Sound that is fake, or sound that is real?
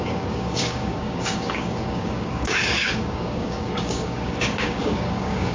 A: fake